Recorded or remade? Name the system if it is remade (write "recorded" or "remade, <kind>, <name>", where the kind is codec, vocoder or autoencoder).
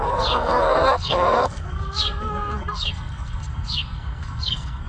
remade, codec, SNAC